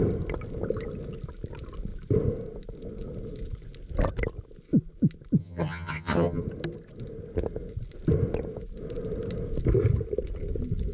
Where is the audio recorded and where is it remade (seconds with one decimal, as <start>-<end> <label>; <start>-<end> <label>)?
0.0-5.4 recorded; 5.4-6.4 remade; 6.4-10.9 recorded